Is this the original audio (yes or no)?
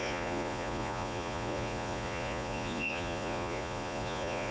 no